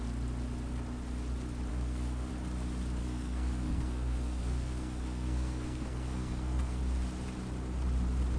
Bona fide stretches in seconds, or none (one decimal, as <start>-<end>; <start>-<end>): 0.0-1.7; 2.3-3.0; 6.8-8.4